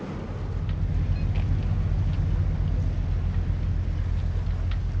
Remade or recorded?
recorded